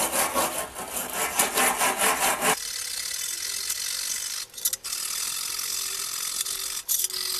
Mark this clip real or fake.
real